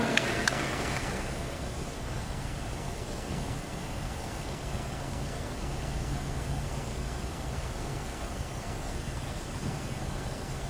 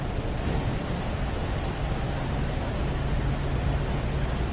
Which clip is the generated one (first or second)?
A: first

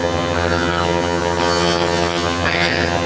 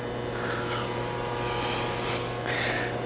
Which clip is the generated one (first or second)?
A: first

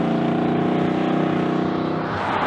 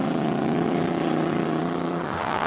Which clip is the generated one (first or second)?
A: second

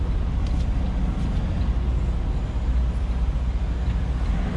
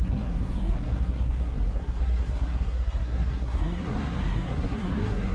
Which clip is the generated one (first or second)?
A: second